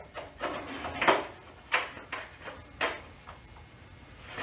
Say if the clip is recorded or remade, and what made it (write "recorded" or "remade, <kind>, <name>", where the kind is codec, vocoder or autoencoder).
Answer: recorded